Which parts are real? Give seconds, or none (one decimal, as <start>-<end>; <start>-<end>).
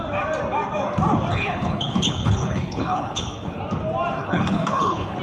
0.0-1.3; 3.6-4.2